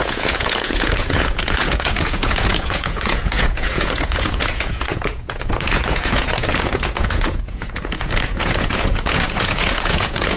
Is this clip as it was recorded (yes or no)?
no